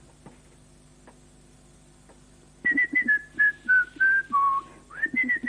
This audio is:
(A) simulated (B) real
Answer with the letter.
B